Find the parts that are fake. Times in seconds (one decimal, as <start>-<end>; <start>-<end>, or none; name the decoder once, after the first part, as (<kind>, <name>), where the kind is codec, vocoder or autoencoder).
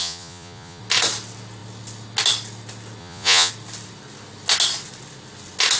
0.0-0.8 (vocoder, Vocos); 3.0-3.5